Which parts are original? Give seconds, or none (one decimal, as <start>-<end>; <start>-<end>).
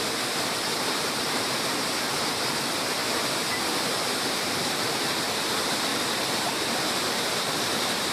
3.0-3.9